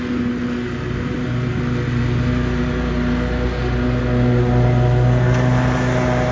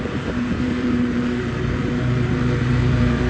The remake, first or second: second